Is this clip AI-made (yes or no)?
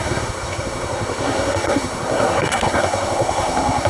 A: yes